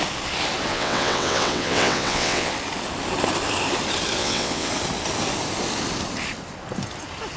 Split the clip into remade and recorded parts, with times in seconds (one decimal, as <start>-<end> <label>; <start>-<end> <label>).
0.0-0.7 recorded; 0.7-2.5 remade; 2.5-4.2 recorded; 4.2-4.7 remade; 4.7-7.4 recorded